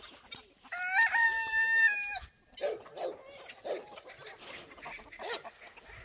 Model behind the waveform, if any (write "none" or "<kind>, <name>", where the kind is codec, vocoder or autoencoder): none